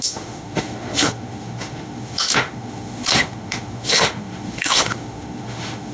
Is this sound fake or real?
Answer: fake